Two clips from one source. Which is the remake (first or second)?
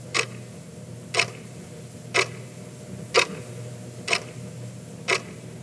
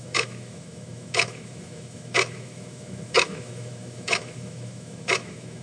second